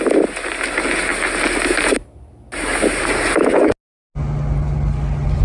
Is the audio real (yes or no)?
yes